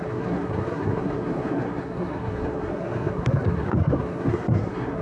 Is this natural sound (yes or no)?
no